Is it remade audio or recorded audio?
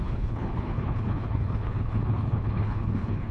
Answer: remade